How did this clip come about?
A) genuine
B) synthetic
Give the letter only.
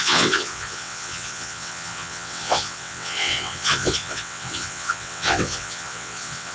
B